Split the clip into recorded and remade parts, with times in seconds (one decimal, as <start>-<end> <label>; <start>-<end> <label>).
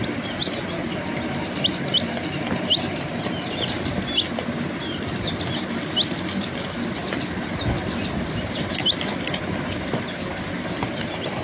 0.0-11.4 recorded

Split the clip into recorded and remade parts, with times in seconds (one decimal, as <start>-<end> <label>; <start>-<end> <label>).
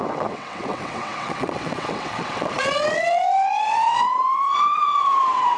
0.0-5.6 remade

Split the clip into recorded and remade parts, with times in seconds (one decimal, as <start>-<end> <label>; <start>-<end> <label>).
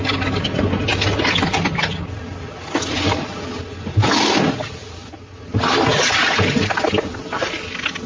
0.0-8.1 recorded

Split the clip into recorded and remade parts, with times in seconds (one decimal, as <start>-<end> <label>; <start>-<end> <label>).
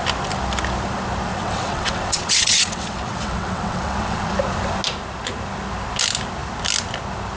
0.0-1.3 recorded; 1.3-4.3 remade; 4.3-7.4 recorded